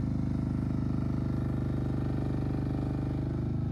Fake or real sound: real